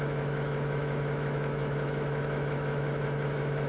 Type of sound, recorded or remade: remade